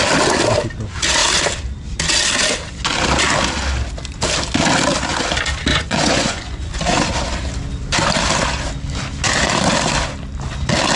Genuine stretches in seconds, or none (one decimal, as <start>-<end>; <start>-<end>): 0.0-5.7; 6.8-11.0